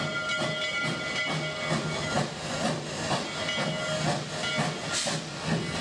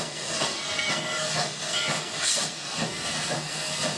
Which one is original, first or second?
first